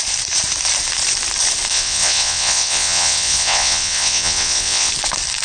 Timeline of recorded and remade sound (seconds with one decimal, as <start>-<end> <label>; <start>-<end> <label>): 0.0-1.7 recorded; 1.7-4.9 remade; 4.9-5.4 recorded